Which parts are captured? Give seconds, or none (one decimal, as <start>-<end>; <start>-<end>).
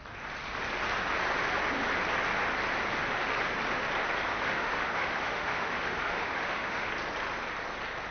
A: 0.0-4.3; 6.9-8.1